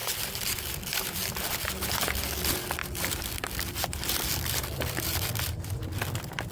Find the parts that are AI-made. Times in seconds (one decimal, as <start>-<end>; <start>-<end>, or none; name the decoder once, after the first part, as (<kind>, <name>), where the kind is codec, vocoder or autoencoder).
0.0-2.2 (vocoder, BigVGAN v2); 2.8-5.7